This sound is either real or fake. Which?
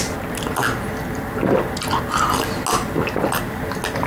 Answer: real